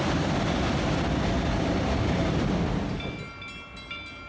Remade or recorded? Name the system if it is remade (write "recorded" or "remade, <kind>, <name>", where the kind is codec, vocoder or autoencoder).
recorded